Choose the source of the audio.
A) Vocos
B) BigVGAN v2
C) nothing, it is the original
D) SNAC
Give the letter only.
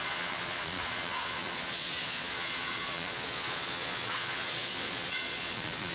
A